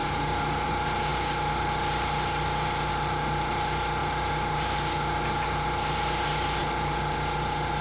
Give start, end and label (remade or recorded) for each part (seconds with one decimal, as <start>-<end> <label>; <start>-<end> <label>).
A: 0.0-0.7 remade; 0.7-7.8 recorded